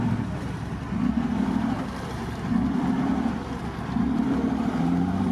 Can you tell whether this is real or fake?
fake